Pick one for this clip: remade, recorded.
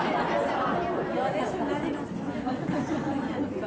recorded